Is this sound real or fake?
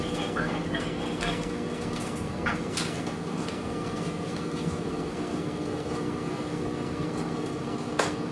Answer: fake